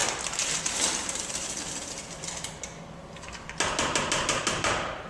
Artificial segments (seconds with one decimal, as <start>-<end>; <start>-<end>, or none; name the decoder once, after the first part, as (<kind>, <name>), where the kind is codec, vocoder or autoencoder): none